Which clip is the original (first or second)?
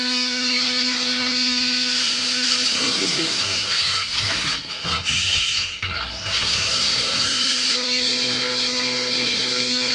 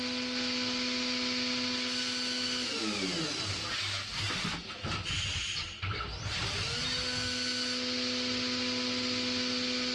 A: second